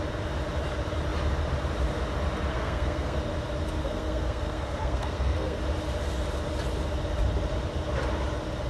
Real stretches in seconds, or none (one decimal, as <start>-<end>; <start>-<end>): 0.0-2.5; 3.2-3.8; 5.6-8.7